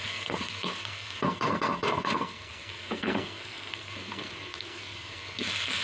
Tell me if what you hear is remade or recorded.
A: remade